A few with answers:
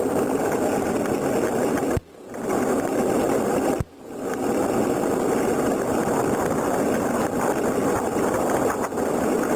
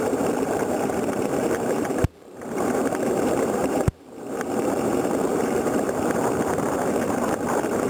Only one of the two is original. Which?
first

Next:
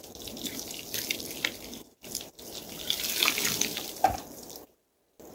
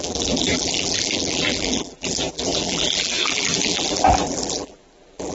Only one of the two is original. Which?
first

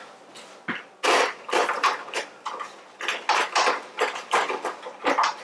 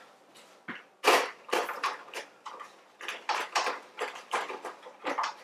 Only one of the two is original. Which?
first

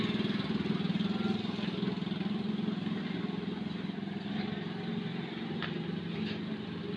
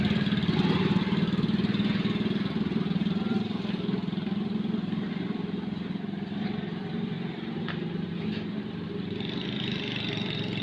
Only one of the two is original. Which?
first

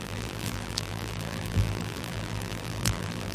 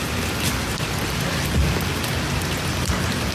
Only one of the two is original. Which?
second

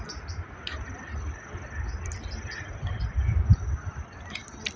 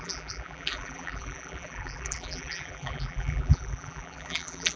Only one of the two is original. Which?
first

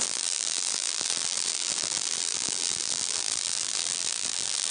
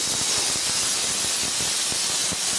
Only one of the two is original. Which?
second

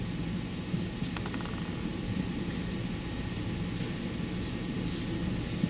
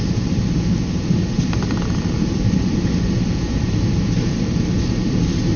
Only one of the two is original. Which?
first